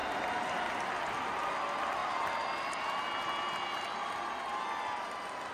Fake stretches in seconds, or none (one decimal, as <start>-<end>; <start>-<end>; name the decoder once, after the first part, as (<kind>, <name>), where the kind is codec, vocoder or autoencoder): none